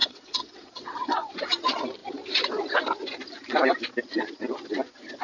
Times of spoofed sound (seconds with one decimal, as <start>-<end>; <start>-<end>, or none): 0.0-1.3